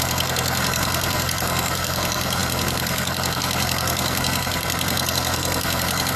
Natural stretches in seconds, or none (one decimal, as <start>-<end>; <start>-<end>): none